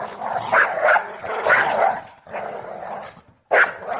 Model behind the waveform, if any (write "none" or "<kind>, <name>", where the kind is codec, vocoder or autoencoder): none